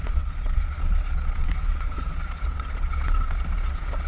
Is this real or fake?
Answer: fake